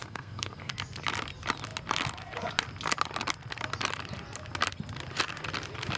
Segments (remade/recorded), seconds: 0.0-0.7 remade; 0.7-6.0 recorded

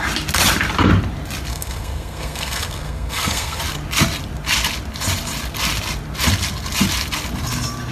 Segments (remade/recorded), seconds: 0.0-1.5 recorded; 1.5-3.6 remade; 3.6-7.9 recorded

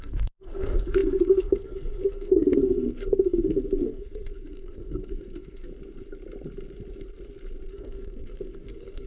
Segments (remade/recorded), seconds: 0.0-5.7 remade; 5.7-7.7 recorded; 7.7-9.1 remade

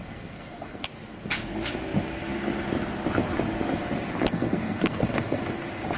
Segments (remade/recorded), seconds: 0.0-0.8 remade; 0.8-4.3 recorded; 4.3-5.4 remade; 5.4-6.0 recorded

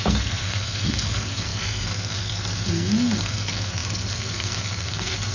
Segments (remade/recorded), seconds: 0.0-5.3 remade

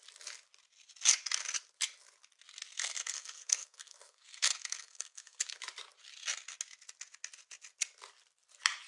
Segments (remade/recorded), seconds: 0.0-2.7 recorded; 2.7-5.4 remade; 5.4-8.9 recorded

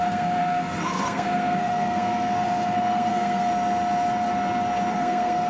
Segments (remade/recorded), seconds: 0.0-3.5 remade; 3.5-4.9 recorded; 4.9-5.5 remade